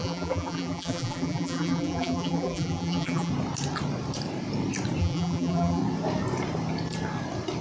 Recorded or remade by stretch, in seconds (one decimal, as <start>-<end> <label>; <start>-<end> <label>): 0.0-3.3 remade; 3.3-5.0 recorded; 5.0-5.8 remade; 5.8-7.6 recorded